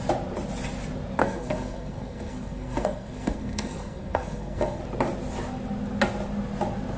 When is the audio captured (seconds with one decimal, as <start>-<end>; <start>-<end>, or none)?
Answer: 0.0-1.2; 4.8-7.0